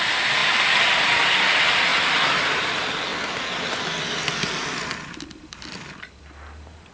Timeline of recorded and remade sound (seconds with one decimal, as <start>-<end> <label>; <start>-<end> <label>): 0.0-6.9 recorded

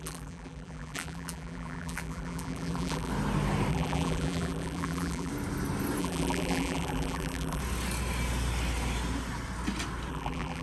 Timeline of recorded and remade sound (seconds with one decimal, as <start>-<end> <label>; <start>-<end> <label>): 0.0-3.1 remade; 3.1-3.7 recorded; 3.7-5.3 remade; 5.3-6.0 recorded; 6.0-7.6 remade; 7.6-10.1 recorded; 10.1-10.6 remade

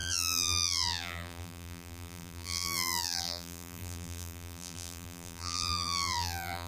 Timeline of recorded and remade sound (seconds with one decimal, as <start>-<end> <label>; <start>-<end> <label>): 0.0-6.7 remade

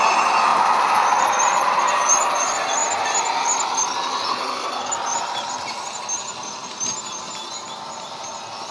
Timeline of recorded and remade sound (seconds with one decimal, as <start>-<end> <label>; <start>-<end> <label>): 0.0-4.3 recorded; 4.3-4.9 remade; 4.9-8.7 recorded

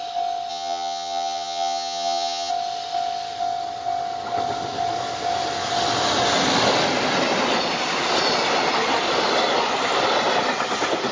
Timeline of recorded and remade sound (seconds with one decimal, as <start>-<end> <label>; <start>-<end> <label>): 0.0-0.5 recorded; 0.5-2.5 remade; 2.5-11.1 recorded

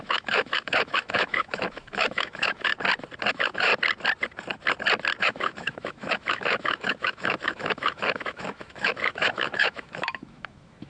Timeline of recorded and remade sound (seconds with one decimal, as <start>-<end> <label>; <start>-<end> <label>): 0.0-2.7 remade; 2.7-3.3 recorded; 3.3-3.7 remade; 3.7-5.2 recorded; 5.2-10.9 remade

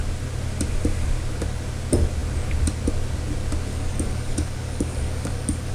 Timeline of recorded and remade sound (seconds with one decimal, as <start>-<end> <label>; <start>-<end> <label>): 0.0-3.7 recorded; 3.7-5.7 remade